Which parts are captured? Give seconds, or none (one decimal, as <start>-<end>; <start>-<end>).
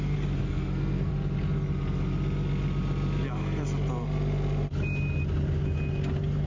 0.0-0.4; 1.1-6.5